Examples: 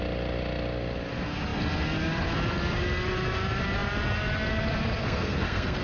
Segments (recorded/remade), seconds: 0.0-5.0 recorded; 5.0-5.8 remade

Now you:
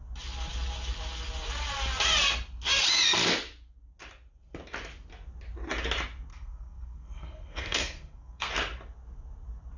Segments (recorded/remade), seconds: 0.0-6.3 recorded; 6.3-8.5 remade; 8.5-9.8 recorded

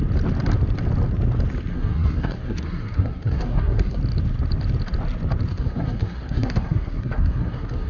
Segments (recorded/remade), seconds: 0.0-1.7 recorded; 1.7-4.0 remade; 4.0-5.5 recorded; 5.5-7.9 remade